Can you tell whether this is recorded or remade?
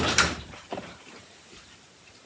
remade